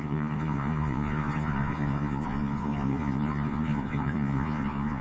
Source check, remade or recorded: remade